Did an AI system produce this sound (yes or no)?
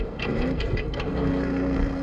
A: yes